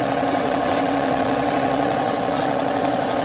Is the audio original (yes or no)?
no